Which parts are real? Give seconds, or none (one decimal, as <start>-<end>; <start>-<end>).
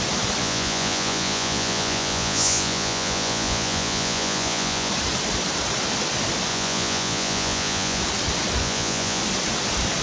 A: 0.0-0.4; 4.9-6.5; 8.0-8.6; 9.2-10.0